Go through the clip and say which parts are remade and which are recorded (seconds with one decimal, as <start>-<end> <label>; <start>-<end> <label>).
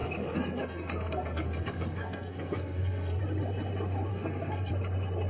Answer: 0.0-3.2 remade; 3.2-4.1 recorded; 4.1-4.7 remade; 4.7-5.3 recorded